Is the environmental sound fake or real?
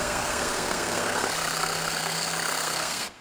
fake